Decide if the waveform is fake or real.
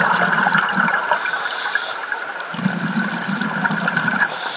real